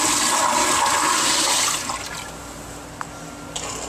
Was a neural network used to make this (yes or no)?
no